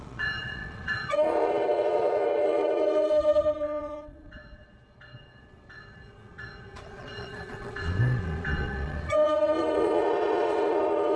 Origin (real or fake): fake